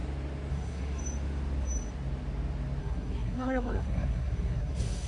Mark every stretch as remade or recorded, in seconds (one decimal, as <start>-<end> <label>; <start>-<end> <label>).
0.0-0.5 recorded; 0.5-1.0 remade; 1.0-2.8 recorded; 2.8-5.1 remade

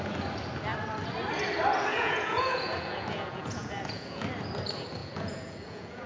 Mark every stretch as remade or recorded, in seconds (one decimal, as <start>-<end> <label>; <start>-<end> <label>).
0.0-1.9 recorded; 1.9-4.2 remade; 4.2-5.0 recorded; 5.0-6.1 remade